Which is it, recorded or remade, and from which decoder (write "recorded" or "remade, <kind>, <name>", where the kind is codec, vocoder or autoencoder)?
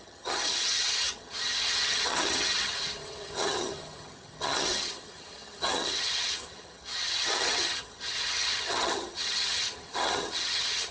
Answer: remade, vocoder, HiFi-GAN